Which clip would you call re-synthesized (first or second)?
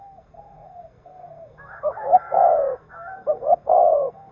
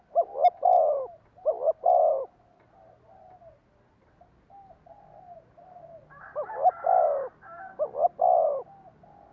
first